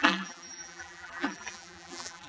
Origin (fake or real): fake